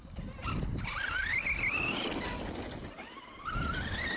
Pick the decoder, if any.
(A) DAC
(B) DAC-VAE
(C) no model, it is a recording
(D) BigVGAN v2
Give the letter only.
C